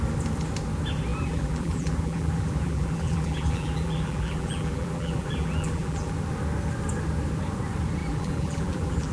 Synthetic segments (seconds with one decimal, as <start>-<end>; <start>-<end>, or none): 1.1-6.1; 8.0-9.1